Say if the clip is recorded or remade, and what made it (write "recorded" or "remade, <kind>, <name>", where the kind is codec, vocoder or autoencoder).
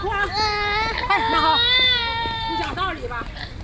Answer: recorded